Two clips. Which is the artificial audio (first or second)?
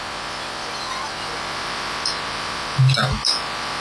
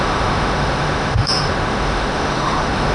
second